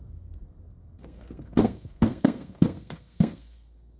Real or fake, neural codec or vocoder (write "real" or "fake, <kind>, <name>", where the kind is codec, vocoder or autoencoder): fake, codec, SNAC